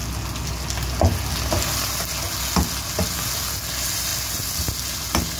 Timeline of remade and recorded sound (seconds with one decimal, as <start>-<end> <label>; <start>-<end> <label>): 0.0-4.1 recorded; 4.1-5.0 remade; 5.0-5.4 recorded